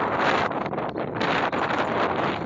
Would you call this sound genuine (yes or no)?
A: yes